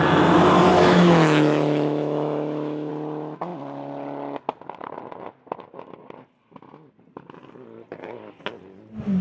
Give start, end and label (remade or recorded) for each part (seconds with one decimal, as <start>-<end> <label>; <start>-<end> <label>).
0.0-0.7 recorded; 0.7-2.9 remade; 2.9-9.2 recorded